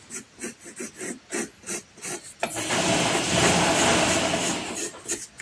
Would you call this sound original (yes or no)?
yes